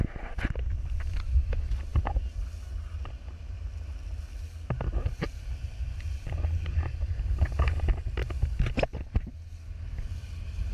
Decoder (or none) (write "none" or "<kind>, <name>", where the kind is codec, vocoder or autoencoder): none